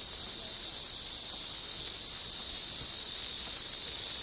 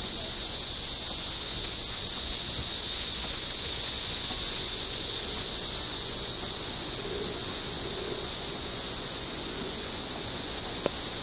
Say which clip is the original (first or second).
first